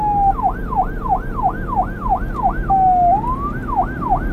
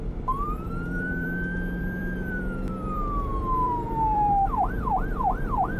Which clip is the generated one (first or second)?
second